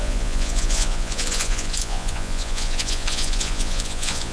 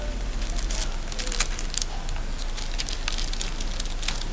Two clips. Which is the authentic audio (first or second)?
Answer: second